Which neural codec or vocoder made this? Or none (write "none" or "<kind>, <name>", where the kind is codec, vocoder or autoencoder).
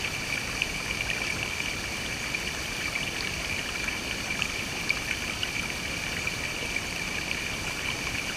vocoder, BigVGAN v2